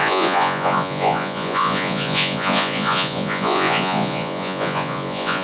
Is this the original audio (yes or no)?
no